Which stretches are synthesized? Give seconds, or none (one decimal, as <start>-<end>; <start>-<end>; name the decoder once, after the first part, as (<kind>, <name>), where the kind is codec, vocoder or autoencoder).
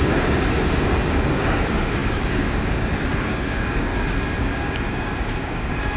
0.0-3.9 (codec, DAC); 4.4-6.0